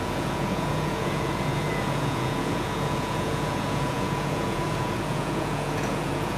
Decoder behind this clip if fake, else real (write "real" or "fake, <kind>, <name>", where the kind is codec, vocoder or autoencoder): fake, vocoder, Vocos